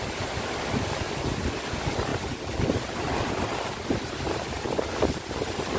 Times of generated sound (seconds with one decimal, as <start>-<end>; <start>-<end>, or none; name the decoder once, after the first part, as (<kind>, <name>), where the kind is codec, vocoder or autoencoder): none